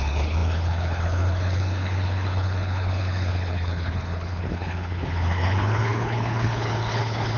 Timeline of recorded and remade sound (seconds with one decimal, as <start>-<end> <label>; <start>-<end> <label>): 0.0-7.4 remade